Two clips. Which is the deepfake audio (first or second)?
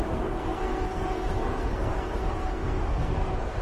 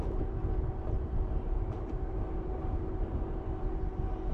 first